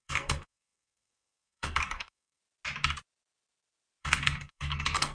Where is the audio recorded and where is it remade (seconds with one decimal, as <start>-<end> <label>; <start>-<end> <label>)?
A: 0.0-2.4 remade; 2.4-4.0 recorded; 4.0-5.1 remade